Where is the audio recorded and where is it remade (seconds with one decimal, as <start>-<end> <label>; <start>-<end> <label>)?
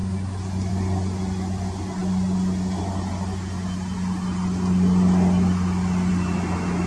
0.0-6.9 recorded